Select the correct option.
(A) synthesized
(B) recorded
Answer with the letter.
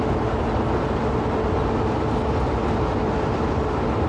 B